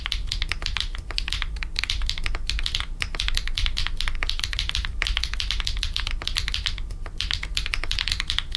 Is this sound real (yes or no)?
yes